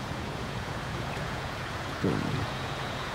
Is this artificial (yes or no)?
yes